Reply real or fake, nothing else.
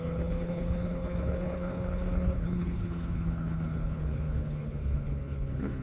fake